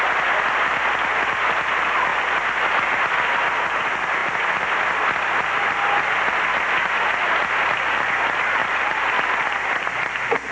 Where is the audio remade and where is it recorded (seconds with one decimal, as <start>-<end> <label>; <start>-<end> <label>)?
0.0-8.6 recorded; 8.6-9.1 remade; 9.1-10.5 recorded